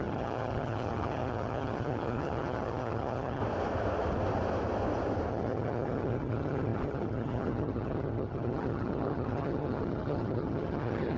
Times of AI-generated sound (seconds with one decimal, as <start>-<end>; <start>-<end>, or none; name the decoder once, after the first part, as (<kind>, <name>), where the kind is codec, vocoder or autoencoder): 0.0-3.4 (vocoder, HiFi-GAN); 5.3-11.2